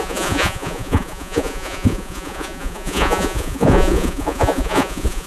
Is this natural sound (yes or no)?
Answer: no